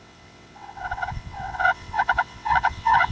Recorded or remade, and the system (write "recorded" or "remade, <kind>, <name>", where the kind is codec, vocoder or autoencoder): remade, vocoder, WaveNeXt